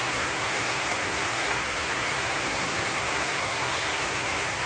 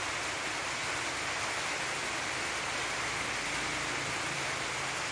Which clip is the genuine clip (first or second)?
second